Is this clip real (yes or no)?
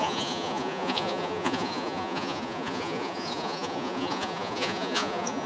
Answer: no